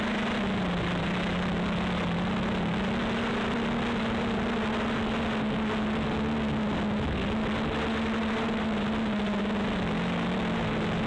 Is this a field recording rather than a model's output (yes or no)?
yes